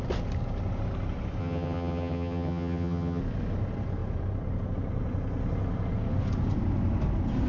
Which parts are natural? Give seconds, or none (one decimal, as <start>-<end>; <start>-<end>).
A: 0.0-1.4; 3.2-7.5